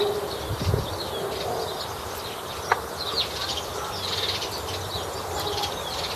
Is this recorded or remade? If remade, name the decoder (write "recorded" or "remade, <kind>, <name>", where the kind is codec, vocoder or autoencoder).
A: recorded